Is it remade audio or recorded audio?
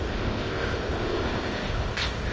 remade